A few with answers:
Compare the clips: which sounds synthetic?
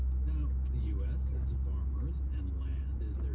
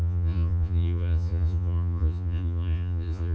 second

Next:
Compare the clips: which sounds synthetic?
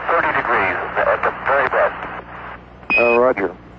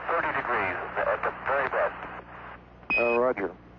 first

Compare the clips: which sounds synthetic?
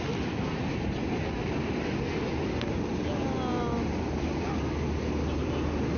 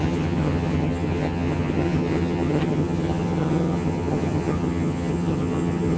second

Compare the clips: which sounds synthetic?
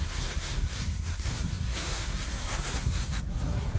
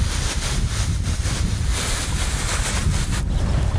first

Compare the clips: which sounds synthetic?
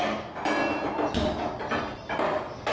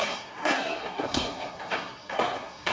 second